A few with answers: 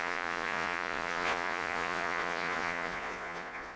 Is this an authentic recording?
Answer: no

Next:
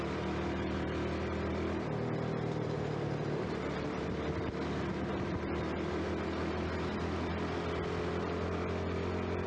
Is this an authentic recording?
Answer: yes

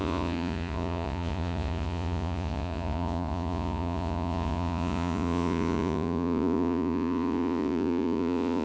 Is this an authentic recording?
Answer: no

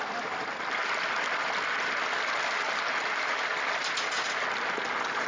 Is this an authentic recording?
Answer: yes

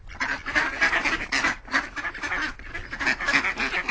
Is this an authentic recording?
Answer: yes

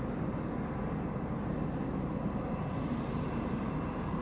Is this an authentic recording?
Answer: yes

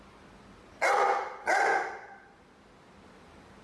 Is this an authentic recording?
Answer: yes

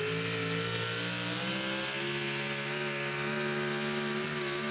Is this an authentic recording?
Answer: yes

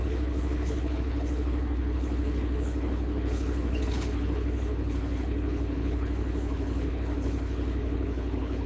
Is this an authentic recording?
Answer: no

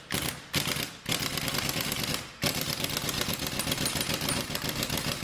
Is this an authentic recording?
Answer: yes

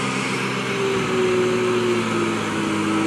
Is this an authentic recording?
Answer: yes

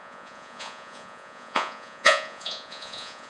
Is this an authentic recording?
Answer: no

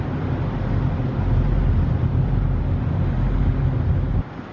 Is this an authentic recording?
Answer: yes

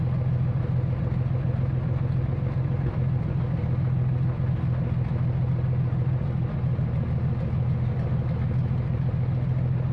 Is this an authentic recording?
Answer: yes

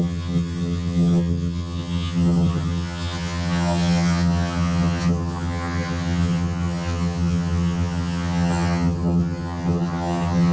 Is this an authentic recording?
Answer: no